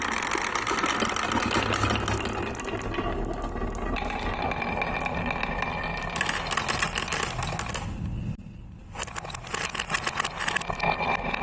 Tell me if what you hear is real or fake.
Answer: real